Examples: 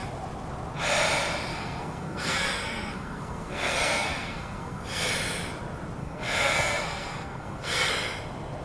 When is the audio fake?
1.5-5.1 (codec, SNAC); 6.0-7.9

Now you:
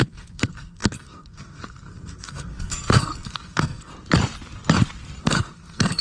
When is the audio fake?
0.0-3.9 (codec, SNAC); 5.2-6.0

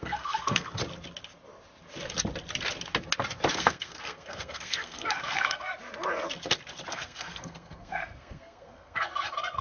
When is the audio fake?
0.0-0.8 (codec, SNAC); 3.5-5.7; 6.9-9.6